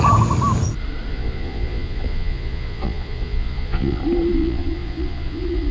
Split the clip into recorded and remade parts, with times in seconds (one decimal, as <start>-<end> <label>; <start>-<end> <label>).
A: 0.0-1.1 recorded; 1.1-4.0 remade; 4.0-4.4 recorded; 4.4-5.7 remade